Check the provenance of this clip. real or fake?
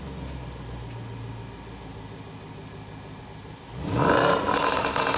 real